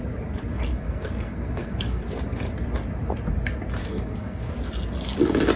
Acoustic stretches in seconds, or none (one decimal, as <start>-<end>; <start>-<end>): 0.0-0.7; 2.0-3.8; 4.5-5.6